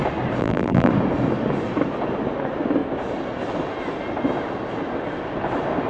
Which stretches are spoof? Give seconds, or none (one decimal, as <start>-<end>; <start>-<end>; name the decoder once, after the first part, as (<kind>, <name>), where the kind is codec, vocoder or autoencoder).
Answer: 0.4-0.9 (vocoder, BigVGAN v2)